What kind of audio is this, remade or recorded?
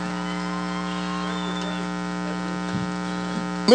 recorded